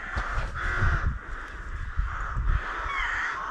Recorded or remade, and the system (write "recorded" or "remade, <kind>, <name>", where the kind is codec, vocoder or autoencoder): recorded